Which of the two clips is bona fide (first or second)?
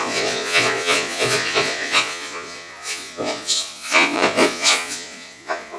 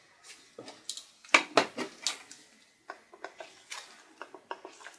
second